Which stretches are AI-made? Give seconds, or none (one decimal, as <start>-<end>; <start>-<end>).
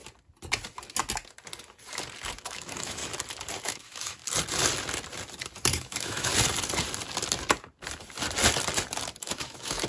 2.4-3.0; 3.6-4.2; 5.7-6.3; 9.2-9.9